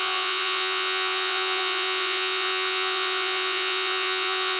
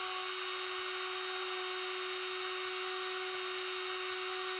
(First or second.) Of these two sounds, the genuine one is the second